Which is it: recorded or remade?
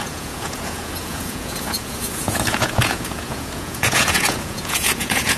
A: remade